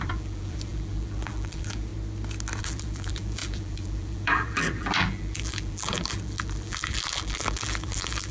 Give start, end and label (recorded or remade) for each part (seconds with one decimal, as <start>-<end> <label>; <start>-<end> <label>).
0.0-1.9 remade; 1.9-2.6 recorded; 2.6-8.3 remade